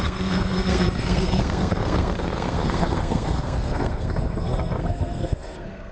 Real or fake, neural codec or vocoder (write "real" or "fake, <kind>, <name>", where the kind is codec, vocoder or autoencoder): fake, codec, SNAC